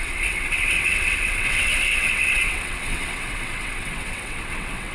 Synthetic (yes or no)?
yes